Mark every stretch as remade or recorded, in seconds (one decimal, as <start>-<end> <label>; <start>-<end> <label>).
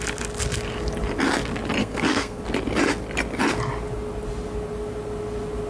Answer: 0.0-1.8 recorded; 1.8-2.4 remade; 2.4-5.7 recorded